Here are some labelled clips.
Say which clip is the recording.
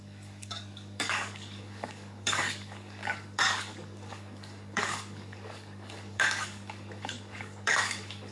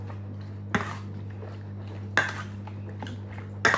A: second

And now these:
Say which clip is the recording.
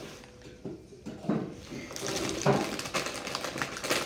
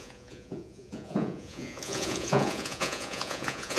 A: first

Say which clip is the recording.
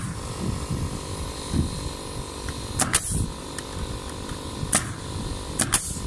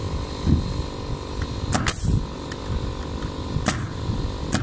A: second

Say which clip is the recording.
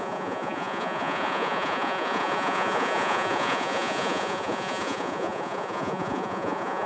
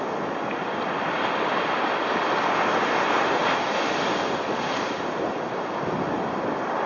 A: second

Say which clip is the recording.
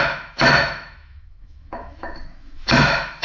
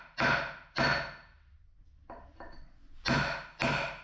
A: second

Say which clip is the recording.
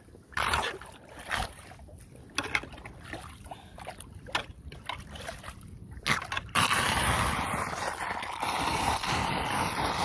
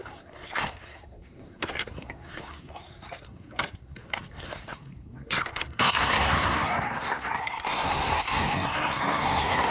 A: first